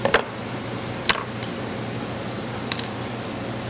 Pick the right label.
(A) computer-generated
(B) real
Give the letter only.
B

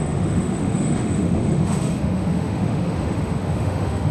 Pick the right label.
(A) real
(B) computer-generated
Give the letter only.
B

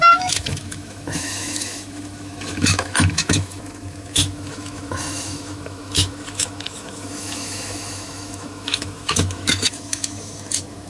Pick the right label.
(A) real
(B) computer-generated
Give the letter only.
B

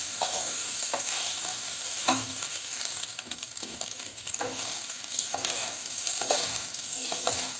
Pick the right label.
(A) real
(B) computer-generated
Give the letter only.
B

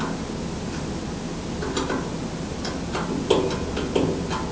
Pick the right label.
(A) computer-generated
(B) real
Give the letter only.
B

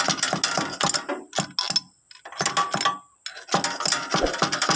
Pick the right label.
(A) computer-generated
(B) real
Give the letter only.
B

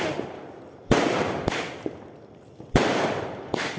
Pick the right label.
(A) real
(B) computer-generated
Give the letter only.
A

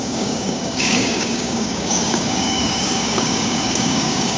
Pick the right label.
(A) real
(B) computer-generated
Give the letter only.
B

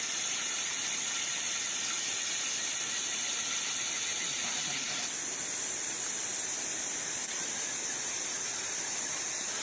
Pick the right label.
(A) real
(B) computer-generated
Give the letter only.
A